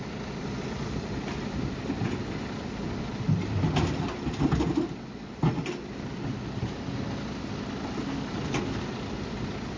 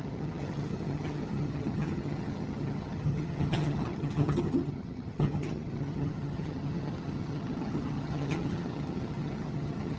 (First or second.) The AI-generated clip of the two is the second